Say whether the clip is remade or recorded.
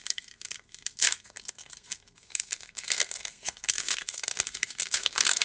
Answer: remade